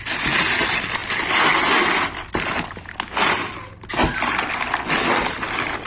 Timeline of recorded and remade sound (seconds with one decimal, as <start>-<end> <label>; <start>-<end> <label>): 0.0-5.9 recorded